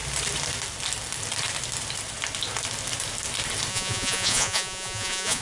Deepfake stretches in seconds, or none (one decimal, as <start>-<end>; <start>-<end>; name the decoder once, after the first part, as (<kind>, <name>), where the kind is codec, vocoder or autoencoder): 3.7-5.4 (vocoder, Vocos)